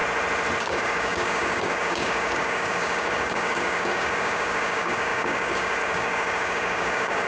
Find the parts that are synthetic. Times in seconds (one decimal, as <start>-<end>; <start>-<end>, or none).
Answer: 0.6-7.3